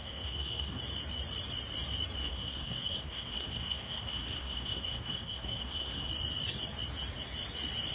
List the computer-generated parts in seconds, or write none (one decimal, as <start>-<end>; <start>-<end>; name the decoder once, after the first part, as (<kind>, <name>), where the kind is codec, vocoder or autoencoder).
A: 0.0-0.8 (codec, SNAC); 2.2-6.1